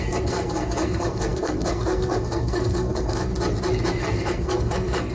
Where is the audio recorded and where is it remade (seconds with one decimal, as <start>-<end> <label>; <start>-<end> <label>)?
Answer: 0.0-3.3 remade; 3.3-4.0 recorded; 4.0-5.1 remade